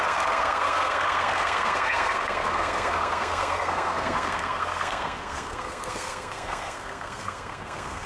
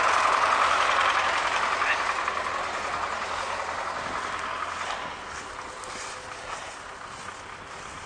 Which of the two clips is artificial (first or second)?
first